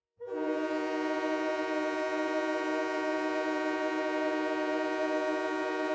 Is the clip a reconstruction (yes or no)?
yes